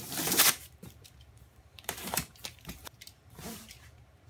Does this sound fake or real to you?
fake